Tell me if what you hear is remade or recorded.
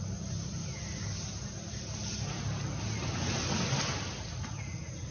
recorded